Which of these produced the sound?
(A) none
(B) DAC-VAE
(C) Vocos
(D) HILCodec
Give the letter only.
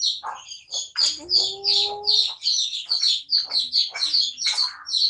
A